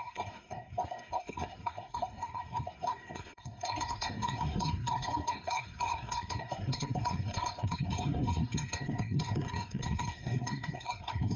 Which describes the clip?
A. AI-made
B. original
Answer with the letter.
A